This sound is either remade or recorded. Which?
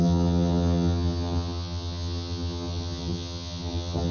remade